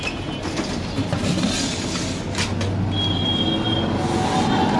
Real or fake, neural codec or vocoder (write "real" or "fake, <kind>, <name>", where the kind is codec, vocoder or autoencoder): real